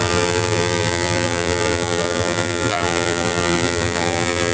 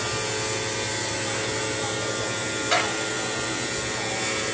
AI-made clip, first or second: first